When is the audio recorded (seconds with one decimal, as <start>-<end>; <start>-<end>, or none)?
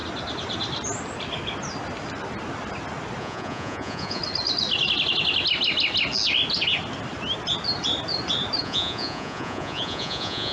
0.0-3.2; 4.2-8.6